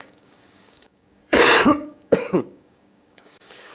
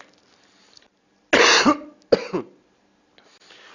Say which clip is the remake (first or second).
first